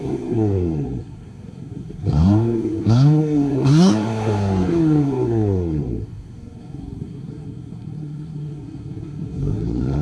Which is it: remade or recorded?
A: remade